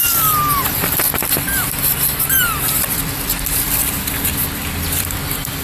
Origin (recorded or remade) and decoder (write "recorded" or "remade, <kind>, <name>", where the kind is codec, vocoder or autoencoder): remade, vocoder, BigVGAN v2